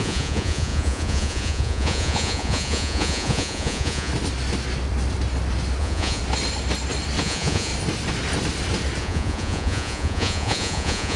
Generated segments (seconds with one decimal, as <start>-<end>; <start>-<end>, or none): 0.0-4.1; 5.8-6.2; 7.2-7.7; 9.0-11.2